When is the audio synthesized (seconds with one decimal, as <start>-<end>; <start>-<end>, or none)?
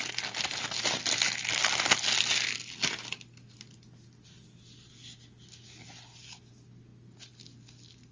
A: none